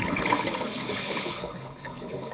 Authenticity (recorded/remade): remade